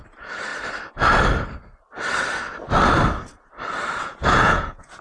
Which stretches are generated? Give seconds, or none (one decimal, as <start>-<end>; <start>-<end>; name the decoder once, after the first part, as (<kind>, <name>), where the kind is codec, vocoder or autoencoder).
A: 4.0-5.0 (vocoder, Vocos)

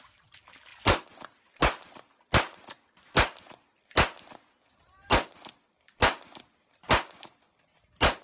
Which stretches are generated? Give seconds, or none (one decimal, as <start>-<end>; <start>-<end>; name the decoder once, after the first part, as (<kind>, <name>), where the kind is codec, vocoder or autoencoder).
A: none

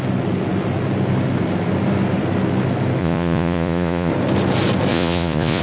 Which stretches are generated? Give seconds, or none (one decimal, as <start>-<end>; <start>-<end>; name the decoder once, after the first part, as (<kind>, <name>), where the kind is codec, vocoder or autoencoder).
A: 3.0-4.1 (vocoder, Vocos); 4.9-5.6

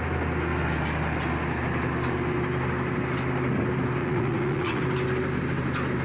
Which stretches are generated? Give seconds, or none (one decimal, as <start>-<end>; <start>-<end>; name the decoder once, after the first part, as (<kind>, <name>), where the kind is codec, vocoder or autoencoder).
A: 4.0-4.8 (vocoder, Vocos)

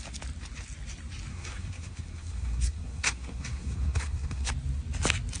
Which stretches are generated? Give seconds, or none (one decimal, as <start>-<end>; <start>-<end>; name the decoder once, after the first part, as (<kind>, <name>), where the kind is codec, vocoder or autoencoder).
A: 1.3-4.5 (codec, SNAC)